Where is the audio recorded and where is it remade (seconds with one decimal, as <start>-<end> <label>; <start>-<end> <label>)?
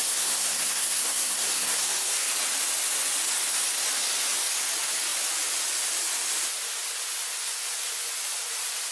0.0-2.3 remade; 2.3-8.9 recorded